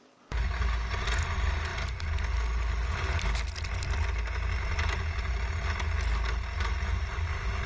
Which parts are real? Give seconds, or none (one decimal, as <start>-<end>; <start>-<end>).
0.0-7.7